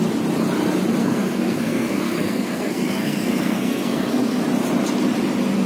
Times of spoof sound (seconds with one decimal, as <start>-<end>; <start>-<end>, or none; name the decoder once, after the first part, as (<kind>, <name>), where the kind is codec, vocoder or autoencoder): 1.0-4.4 (codec, SNAC)